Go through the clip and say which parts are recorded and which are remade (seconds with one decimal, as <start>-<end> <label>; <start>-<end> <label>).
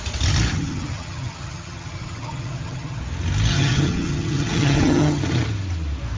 0.0-0.5 recorded; 0.5-3.0 remade; 3.0-3.5 recorded; 3.5-5.2 remade; 5.2-6.2 recorded